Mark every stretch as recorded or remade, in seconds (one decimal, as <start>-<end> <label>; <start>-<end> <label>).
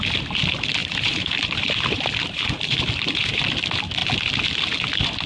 0.0-0.8 recorded; 0.8-3.4 remade; 3.4-5.3 recorded